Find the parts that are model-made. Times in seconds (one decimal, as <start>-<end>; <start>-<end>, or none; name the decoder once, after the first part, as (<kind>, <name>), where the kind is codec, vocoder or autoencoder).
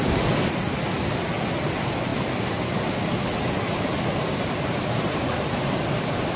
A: none